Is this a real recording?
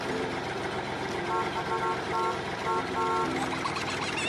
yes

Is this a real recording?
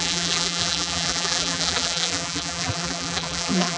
no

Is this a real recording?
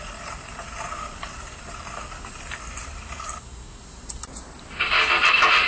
yes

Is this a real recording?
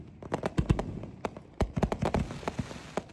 yes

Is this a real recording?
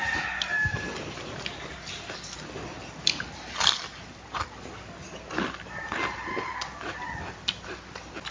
yes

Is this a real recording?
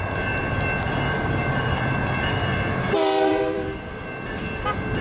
no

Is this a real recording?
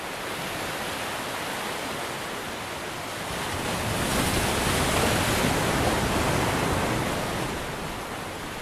yes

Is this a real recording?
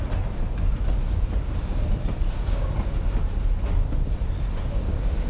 yes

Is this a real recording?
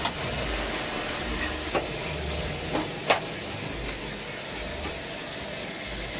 yes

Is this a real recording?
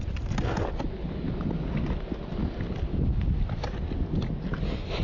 yes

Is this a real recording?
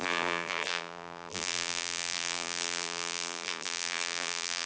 no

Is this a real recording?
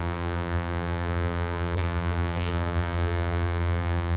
no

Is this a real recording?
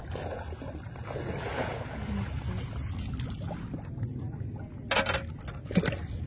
yes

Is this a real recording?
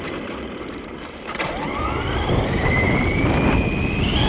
yes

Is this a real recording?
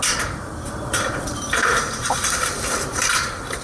no